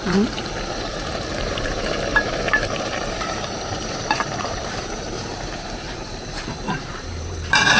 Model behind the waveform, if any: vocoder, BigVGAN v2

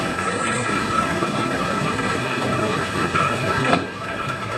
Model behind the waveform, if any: codec, SNAC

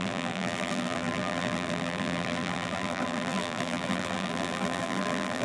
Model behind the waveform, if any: vocoder, BigVGAN v2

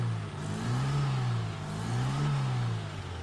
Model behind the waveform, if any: none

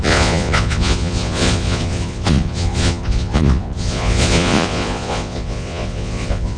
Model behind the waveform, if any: vocoder, Vocos